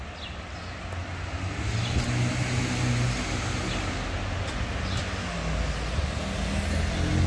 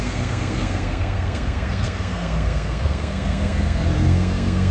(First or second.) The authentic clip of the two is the first